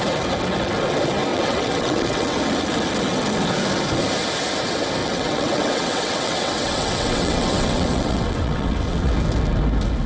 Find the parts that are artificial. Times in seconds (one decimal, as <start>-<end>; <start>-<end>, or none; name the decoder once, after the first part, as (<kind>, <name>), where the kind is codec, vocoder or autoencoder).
1.3-2.4 (vocoder, WaveNeXt); 5.0-9.1